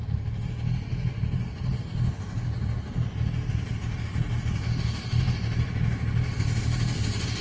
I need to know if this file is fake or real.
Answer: real